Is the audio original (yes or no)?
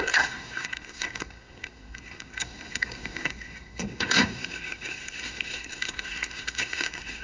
no